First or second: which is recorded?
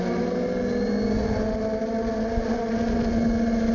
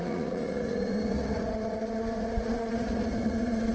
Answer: first